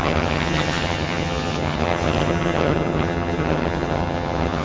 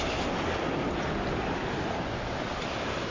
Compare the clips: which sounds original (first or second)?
second